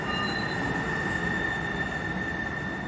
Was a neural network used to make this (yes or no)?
no